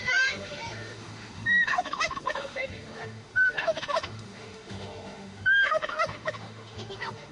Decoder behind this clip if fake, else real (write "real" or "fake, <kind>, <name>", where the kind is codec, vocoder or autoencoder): fake, autoencoder, DAC-VAE